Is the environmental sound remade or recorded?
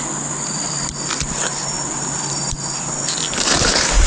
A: recorded